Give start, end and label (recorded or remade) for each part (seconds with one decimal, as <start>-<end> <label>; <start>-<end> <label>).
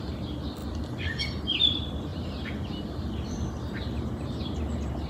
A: 0.0-5.1 recorded